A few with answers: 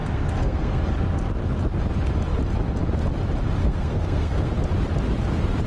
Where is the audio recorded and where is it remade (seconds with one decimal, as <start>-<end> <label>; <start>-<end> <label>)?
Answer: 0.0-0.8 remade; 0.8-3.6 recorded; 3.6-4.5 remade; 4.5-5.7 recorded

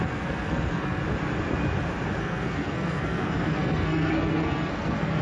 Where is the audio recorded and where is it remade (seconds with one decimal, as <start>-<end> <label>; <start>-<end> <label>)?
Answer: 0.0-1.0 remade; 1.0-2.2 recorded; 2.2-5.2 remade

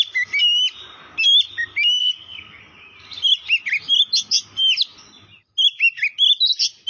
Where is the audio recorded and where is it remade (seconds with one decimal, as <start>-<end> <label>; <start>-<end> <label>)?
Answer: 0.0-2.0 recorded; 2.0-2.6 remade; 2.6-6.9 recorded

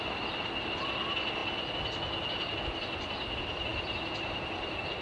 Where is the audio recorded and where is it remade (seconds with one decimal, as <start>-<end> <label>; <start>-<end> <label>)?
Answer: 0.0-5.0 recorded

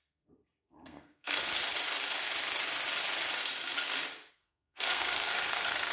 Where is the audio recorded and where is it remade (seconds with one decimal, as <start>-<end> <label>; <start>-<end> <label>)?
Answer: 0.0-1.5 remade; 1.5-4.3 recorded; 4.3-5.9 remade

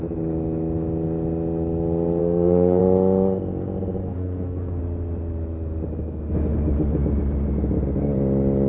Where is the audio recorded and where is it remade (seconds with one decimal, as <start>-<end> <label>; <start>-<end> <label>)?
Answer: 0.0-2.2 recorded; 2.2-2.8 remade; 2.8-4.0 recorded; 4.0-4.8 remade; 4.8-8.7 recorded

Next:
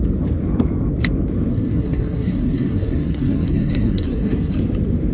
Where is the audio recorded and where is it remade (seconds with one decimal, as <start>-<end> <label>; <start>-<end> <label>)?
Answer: 0.0-1.5 recorded; 1.5-4.6 remade; 4.6-5.1 recorded

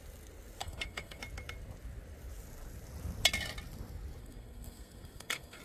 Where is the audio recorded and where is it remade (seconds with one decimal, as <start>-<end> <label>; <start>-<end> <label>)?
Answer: 0.0-0.6 recorded; 0.6-1.2 remade; 1.2-4.2 recorded; 4.2-5.6 remade